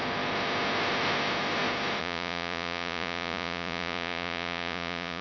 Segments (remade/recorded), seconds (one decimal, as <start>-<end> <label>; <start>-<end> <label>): 0.0-2.0 recorded; 2.0-5.2 remade